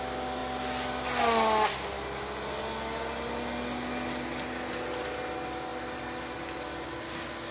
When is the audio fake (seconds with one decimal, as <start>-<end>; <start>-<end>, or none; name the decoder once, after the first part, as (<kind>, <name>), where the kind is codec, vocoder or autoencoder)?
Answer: none